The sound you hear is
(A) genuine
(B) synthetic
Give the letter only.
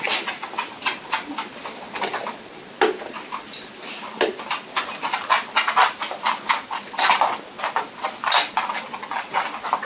A